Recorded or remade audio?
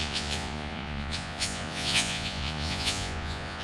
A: remade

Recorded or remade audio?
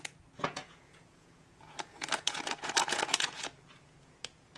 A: remade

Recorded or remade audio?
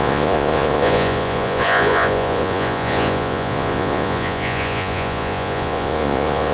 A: remade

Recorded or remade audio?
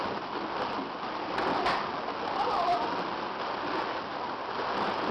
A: recorded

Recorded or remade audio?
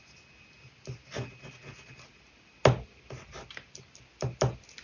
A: recorded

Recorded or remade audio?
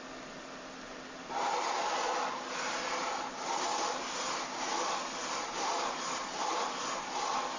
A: recorded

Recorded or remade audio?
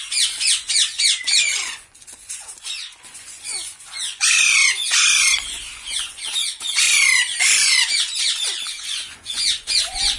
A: remade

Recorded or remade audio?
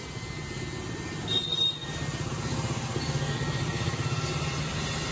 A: recorded